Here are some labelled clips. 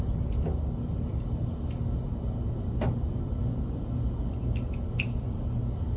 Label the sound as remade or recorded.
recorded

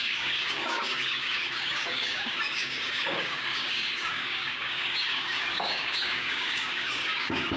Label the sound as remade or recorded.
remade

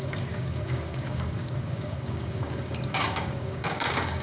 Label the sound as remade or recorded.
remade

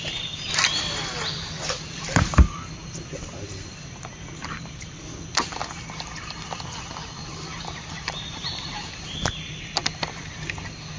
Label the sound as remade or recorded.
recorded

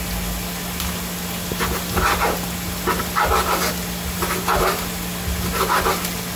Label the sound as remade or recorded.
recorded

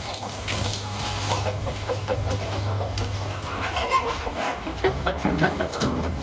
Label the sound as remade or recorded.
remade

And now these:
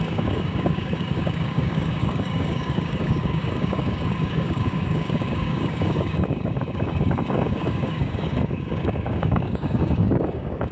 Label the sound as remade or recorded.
remade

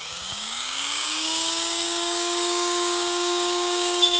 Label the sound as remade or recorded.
remade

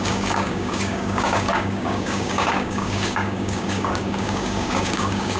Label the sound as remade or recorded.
remade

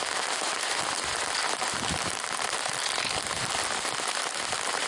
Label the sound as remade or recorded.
recorded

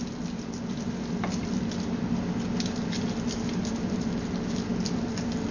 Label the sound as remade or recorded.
recorded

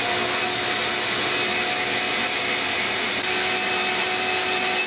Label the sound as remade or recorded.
recorded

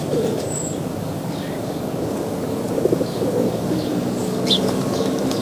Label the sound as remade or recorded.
remade